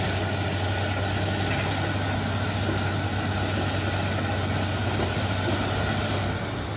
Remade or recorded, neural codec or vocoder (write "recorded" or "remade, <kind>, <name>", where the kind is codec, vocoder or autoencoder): recorded